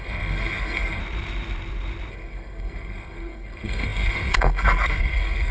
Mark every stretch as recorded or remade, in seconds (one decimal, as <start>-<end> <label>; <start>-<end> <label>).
0.0-1.0 remade; 1.0-2.1 recorded; 2.1-5.5 remade